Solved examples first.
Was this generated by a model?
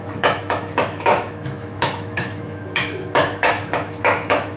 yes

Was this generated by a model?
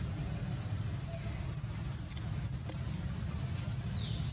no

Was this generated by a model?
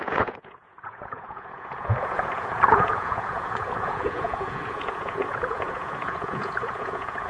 yes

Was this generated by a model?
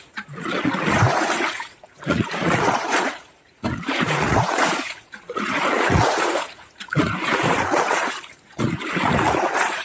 yes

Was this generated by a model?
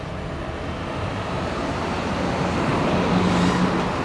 no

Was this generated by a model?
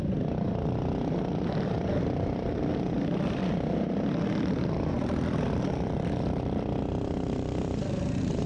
yes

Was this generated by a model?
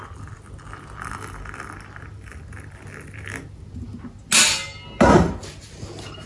no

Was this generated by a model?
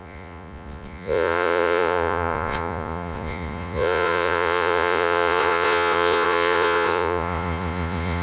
yes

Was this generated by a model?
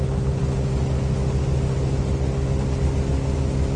no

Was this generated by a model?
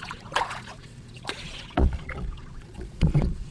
yes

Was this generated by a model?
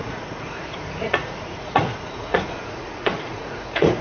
yes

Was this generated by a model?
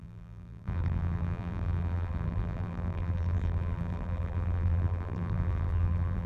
yes